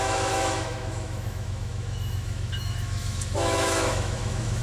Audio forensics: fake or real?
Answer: fake